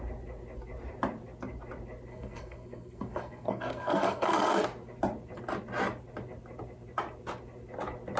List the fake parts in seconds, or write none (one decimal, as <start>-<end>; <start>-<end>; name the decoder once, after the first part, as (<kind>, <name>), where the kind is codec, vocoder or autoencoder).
2.1-4.6 (codec, SNAC)